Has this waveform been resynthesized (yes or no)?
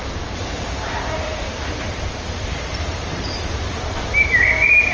yes